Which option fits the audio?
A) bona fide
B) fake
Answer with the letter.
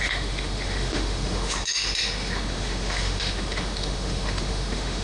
B